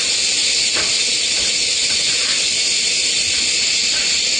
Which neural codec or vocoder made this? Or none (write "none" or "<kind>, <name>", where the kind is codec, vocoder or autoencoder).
none